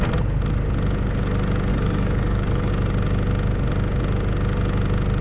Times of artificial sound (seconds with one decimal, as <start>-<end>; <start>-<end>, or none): 1.7-2.7

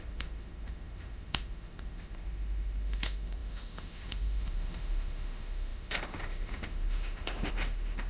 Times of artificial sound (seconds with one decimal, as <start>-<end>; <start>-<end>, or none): 0.0-8.1

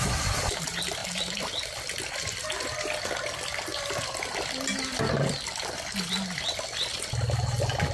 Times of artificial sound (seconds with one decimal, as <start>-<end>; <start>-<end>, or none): none

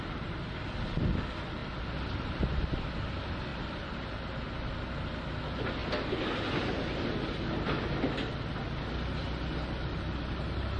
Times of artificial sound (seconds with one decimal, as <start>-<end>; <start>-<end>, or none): 3.5-4.9

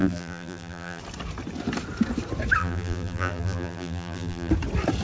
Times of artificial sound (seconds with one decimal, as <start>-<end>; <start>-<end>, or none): 0.0-1.0; 2.6-4.5

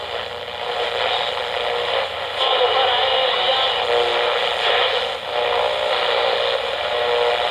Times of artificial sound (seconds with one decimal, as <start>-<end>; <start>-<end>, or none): none

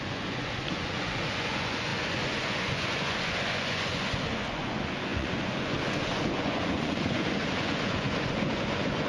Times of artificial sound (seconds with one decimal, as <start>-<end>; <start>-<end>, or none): 0.0-9.1

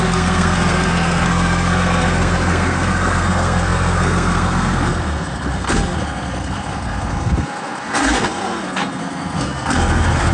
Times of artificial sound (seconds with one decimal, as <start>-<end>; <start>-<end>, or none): 0.0-10.3